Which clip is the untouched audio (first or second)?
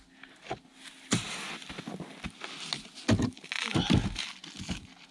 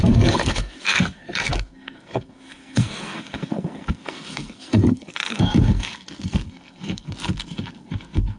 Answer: first